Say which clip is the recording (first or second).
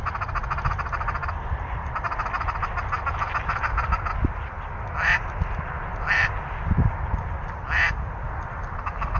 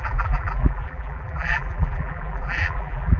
first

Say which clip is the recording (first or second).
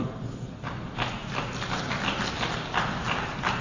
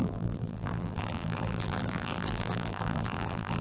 first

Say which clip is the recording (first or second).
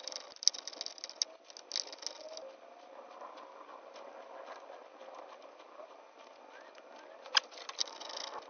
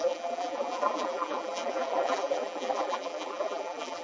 first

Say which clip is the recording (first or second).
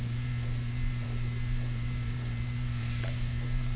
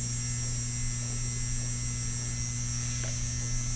second